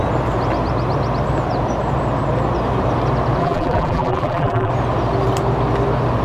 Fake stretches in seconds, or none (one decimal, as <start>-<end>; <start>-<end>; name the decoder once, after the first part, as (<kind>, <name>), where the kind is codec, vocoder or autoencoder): 3.4-4.7 (vocoder, BigVGAN v2)